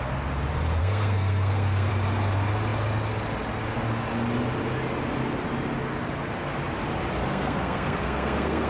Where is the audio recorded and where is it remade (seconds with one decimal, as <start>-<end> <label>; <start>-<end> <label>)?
0.0-0.8 recorded; 0.8-1.9 remade; 1.9-7.3 recorded; 7.3-8.7 remade

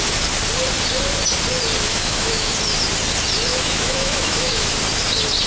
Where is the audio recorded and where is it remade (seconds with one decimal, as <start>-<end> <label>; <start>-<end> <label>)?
0.0-1.9 recorded; 1.9-2.5 remade; 2.5-3.5 recorded; 3.5-4.7 remade; 4.7-5.5 recorded

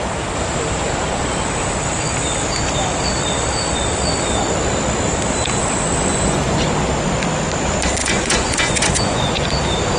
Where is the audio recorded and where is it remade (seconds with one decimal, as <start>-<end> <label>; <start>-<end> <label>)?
0.0-6.1 recorded; 6.1-6.6 remade; 6.6-8.0 recorded; 8.0-9.6 remade; 9.6-10.0 recorded

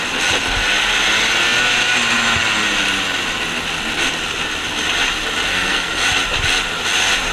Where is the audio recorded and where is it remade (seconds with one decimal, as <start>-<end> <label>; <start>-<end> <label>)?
0.0-5.5 recorded; 5.5-6.0 remade; 6.0-7.3 recorded